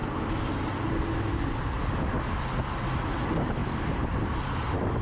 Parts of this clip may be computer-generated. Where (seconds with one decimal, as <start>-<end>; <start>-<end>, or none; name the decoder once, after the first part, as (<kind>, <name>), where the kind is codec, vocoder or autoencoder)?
none

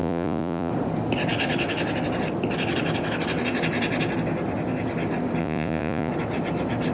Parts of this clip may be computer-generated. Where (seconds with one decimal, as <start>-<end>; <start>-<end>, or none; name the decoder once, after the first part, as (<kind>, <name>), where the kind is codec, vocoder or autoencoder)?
0.0-0.7 (vocoder, Vocos); 5.4-6.1

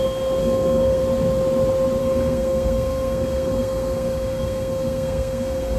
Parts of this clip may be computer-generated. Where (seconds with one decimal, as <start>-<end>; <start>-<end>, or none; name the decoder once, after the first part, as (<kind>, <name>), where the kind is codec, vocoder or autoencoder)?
0.4-1.0 (codec, SNAC); 2.0-5.8